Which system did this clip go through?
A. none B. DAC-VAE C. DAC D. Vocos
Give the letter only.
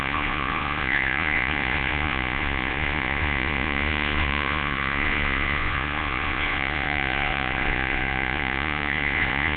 D